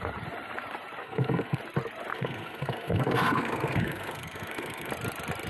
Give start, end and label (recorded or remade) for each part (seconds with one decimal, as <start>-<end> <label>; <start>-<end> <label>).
0.0-1.0 recorded; 1.0-1.6 remade; 1.6-2.1 recorded; 2.1-4.9 remade; 4.9-5.5 recorded